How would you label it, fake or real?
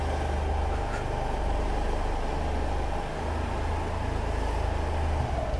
real